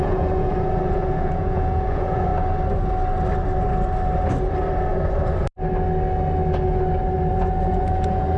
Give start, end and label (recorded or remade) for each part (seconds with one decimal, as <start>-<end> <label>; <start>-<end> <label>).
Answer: 0.0-2.3 remade; 2.3-7.3 recorded; 7.3-8.4 remade